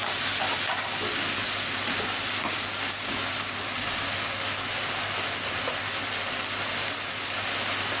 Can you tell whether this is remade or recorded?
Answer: recorded